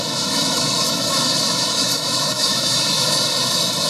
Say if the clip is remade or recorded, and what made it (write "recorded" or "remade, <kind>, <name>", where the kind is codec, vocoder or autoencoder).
remade, autoencoder, DAC-VAE